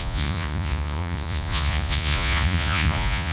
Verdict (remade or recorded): remade